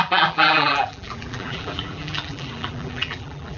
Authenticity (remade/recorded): remade